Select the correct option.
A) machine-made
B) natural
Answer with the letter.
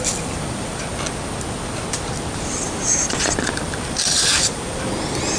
B